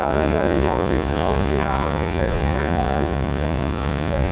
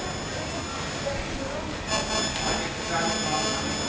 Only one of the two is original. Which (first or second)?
second